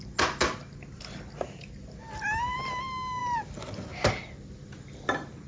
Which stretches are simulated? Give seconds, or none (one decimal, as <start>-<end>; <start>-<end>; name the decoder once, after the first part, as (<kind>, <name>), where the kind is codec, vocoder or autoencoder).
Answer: none